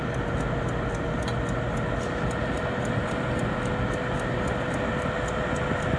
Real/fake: real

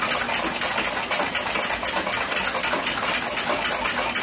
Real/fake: real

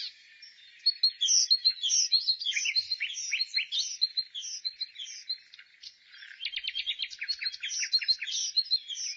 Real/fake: real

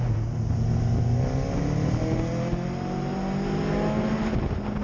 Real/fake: real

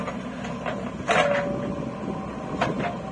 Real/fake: real